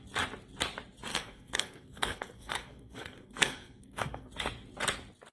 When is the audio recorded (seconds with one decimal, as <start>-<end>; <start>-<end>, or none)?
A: 0.0-1.1; 4.3-5.3